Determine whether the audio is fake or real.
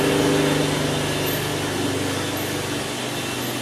real